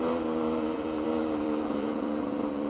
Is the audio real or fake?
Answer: fake